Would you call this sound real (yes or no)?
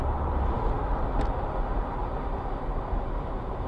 yes